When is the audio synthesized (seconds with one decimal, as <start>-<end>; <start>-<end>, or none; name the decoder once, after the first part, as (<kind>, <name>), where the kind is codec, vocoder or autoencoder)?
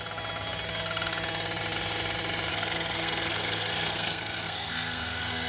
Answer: 2.5-5.5 (codec, SNAC)